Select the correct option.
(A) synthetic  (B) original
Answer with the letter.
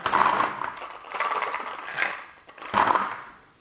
B